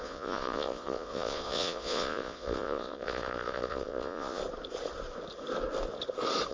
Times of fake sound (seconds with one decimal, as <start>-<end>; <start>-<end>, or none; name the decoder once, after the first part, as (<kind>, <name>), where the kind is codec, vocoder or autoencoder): 0.0-4.4 (vocoder, Vocos)